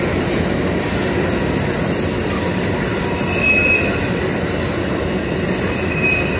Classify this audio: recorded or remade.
recorded